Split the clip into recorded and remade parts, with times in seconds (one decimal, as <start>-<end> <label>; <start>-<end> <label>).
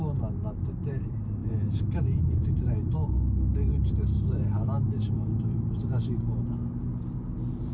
0.0-3.7 recorded; 3.7-6.2 remade; 6.2-7.7 recorded